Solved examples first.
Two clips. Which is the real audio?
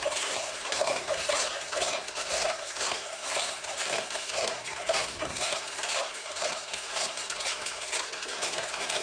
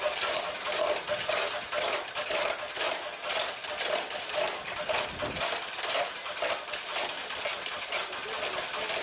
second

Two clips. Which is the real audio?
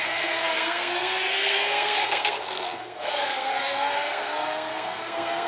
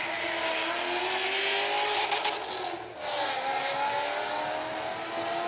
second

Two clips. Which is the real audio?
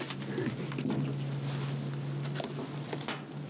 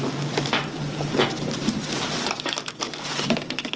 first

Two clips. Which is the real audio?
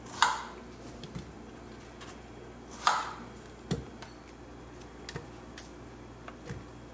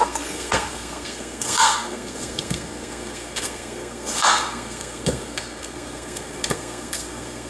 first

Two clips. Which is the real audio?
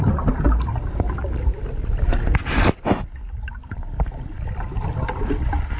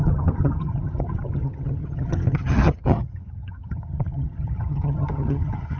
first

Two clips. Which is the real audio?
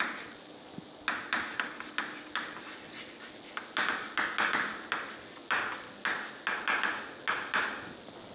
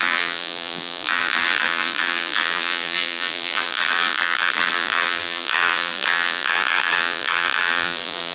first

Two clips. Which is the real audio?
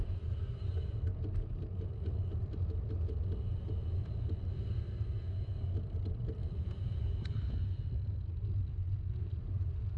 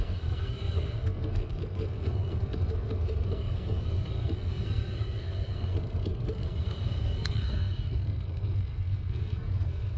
first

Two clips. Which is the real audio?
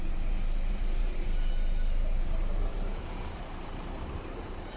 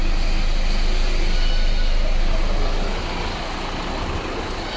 second